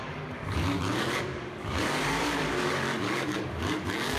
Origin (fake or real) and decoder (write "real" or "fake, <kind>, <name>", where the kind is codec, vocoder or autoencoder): fake, codec, DAC